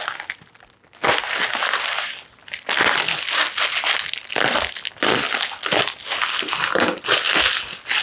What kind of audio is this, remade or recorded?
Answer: recorded